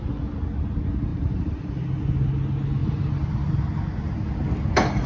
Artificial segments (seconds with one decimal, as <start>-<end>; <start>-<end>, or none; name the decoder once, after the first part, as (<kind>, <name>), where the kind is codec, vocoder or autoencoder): 1.1-1.8 (vocoder, BigVGAN v2); 2.8-3.4